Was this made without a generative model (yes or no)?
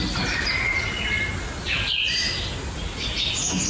yes